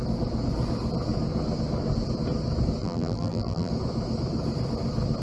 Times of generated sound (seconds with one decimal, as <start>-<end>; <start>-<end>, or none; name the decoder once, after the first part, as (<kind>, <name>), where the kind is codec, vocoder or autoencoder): 2.8-3.7 (vocoder, BigVGAN v2)